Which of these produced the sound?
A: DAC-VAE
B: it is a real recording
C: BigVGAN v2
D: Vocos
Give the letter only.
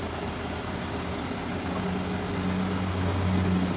B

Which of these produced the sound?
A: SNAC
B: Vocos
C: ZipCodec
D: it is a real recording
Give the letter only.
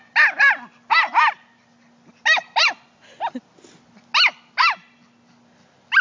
D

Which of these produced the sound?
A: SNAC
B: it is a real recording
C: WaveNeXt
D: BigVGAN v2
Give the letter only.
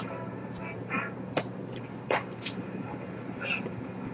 B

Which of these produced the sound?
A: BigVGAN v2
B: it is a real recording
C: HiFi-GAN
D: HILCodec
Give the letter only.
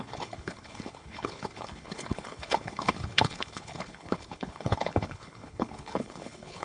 D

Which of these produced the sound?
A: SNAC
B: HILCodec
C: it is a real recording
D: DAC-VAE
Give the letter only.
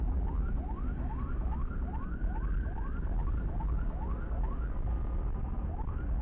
C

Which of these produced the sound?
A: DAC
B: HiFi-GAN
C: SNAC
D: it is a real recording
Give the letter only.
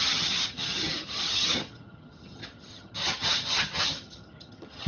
B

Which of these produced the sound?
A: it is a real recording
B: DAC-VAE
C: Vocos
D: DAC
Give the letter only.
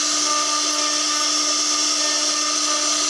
A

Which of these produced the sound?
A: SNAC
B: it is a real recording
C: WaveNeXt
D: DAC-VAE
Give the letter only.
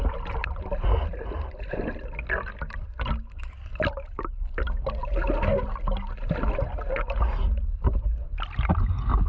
B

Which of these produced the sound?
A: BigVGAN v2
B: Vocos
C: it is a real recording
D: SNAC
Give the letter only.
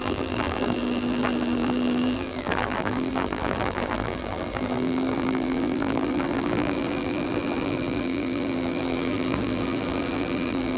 A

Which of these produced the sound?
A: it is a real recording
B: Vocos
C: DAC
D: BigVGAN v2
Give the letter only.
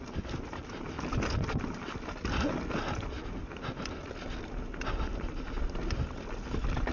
A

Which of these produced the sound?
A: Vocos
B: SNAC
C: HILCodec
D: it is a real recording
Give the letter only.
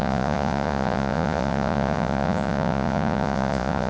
A